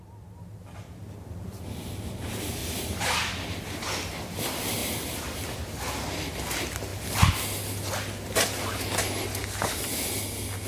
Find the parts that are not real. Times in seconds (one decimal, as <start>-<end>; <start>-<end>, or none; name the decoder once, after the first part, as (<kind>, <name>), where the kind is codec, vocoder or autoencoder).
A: none

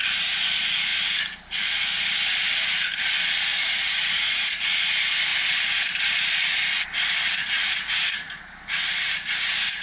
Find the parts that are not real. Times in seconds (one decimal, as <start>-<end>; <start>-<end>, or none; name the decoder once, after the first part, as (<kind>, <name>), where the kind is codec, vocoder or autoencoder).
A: 3.5-4.6 (vocoder, Vocos); 7.4-8.4

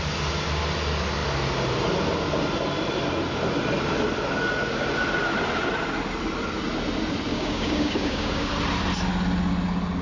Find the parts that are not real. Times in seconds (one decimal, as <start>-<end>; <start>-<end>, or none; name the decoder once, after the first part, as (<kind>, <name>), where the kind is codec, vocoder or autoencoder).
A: 7.3-8.5 (codec, DAC)

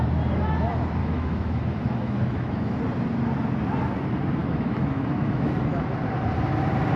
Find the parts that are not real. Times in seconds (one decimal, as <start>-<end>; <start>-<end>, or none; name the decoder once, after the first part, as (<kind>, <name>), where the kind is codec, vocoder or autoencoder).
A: 1.0-2.8 (autoencoder, DAC-VAE); 4.4-5.9

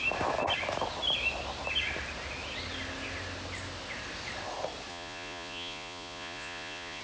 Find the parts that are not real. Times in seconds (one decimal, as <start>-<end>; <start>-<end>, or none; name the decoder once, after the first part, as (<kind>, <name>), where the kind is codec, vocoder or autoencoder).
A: 4.9-7.0 (vocoder, Vocos)